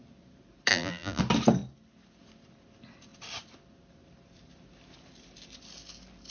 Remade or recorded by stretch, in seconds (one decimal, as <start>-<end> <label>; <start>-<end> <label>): 0.0-0.7 recorded; 0.7-1.2 remade; 1.2-6.3 recorded